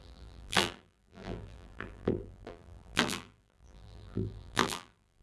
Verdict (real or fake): fake